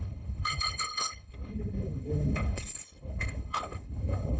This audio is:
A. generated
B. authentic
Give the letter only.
A